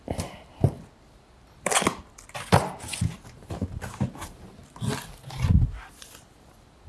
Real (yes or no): yes